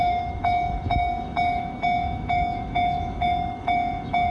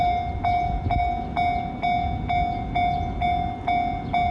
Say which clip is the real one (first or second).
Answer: second